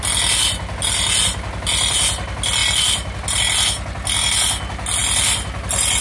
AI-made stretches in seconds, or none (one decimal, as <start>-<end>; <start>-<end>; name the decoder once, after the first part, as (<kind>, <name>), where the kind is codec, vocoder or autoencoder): none